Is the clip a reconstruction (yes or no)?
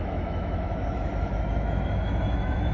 yes